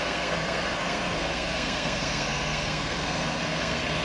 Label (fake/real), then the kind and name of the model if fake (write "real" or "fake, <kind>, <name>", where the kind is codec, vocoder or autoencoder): fake, codec, SNAC